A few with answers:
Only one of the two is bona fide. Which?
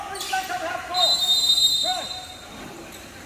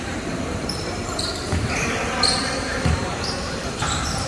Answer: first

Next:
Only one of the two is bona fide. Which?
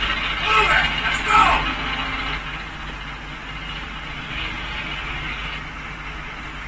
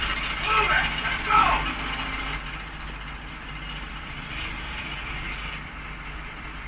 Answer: first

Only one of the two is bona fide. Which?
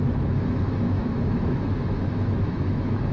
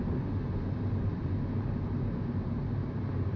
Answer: second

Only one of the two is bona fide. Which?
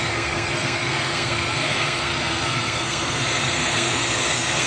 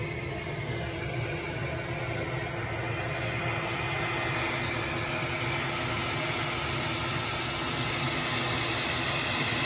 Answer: second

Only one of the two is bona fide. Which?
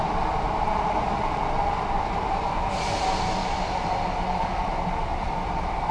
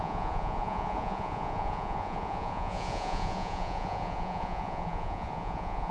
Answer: first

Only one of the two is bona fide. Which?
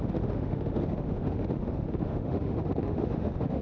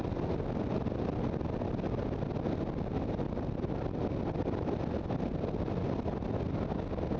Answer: second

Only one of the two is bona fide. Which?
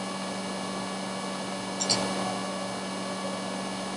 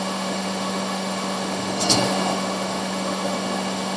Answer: first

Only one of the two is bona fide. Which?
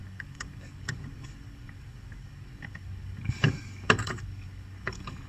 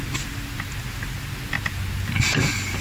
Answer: second